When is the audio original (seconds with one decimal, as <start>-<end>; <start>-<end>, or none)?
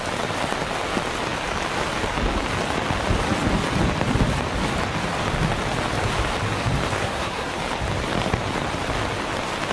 0.0-7.0; 7.6-9.7